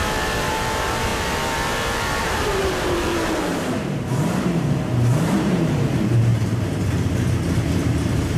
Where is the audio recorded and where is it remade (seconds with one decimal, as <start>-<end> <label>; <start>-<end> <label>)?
0.0-8.4 remade

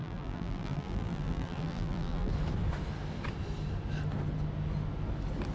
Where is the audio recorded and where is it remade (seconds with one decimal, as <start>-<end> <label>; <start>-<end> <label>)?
0.0-2.3 remade; 2.3-5.5 recorded

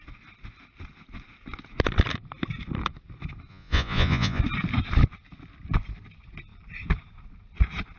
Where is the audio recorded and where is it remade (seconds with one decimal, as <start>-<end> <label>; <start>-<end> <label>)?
0.0-3.5 recorded; 3.5-4.4 remade; 4.4-8.0 recorded